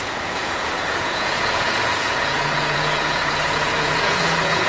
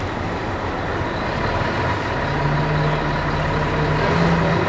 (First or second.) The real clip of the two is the second